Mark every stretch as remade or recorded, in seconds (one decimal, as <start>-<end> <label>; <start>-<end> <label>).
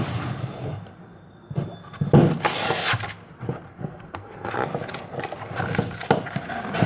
0.0-3.7 recorded; 3.7-4.5 remade; 4.5-6.9 recorded